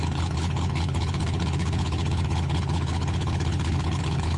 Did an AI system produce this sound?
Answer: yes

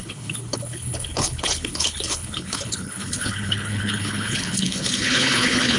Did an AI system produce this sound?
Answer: yes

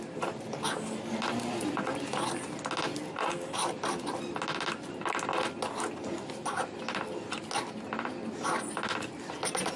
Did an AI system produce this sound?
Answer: no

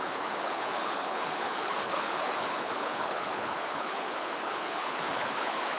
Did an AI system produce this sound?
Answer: yes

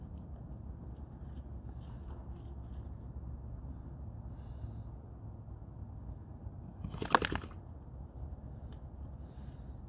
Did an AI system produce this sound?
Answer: no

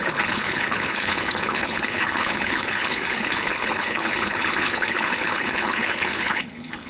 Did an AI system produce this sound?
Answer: yes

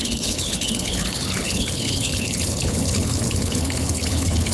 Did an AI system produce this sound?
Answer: yes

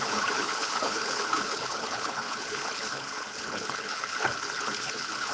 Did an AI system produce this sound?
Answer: yes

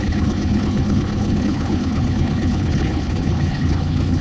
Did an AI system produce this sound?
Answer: yes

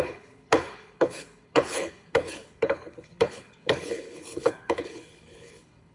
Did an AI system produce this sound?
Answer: yes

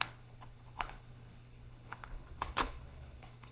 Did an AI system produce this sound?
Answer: yes